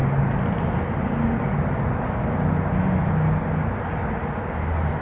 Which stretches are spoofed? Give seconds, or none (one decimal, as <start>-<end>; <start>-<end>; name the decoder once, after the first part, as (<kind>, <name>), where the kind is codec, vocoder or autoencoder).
none